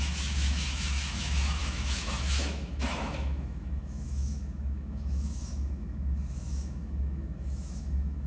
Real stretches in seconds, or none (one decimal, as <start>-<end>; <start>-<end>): none